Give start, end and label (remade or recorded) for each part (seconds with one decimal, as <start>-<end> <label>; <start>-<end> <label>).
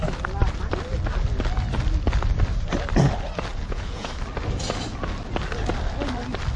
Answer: 0.0-3.5 recorded; 3.5-4.1 remade; 4.1-6.6 recorded